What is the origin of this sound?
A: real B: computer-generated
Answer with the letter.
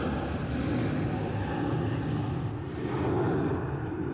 A